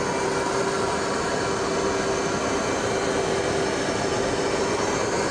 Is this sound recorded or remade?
recorded